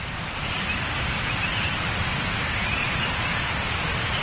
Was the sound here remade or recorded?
remade